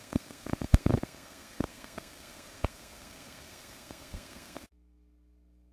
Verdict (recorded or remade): remade